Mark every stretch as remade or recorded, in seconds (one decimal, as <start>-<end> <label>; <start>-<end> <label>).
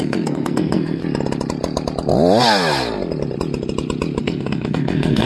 0.0-1.0 remade; 1.0-4.2 recorded; 4.2-5.3 remade